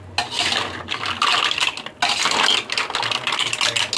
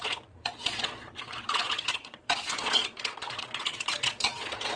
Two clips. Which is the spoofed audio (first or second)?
second